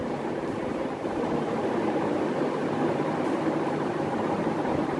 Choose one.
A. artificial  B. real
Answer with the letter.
A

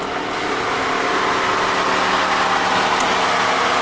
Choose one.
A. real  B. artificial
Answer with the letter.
A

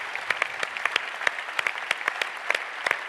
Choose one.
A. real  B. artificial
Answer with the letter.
B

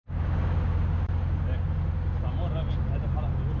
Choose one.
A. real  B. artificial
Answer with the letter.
A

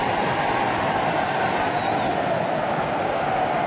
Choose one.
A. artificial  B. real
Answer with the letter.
B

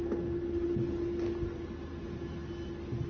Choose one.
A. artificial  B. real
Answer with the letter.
B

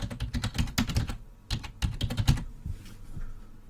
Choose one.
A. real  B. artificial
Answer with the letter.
A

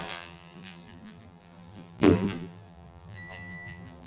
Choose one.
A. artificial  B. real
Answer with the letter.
A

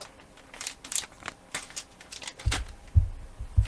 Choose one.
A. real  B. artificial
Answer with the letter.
A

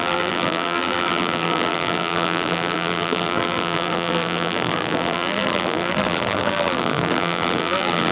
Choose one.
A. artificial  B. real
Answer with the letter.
A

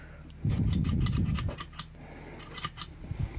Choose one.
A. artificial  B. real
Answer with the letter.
B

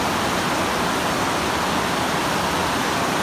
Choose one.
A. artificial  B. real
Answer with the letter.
B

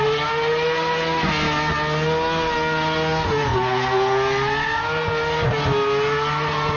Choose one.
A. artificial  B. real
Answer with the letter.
B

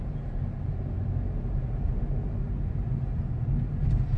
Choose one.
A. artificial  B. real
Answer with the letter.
B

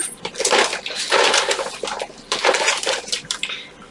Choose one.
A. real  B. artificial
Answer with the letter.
B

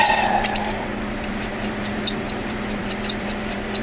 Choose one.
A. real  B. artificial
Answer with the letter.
B